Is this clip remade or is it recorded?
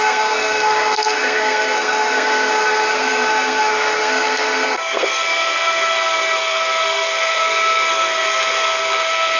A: remade